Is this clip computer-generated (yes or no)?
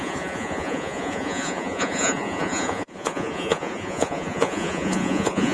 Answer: yes